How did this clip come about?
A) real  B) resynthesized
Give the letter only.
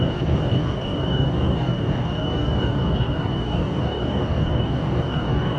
B